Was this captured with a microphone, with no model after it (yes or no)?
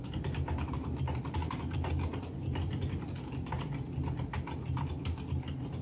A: yes